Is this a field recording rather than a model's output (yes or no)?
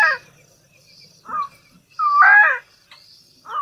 yes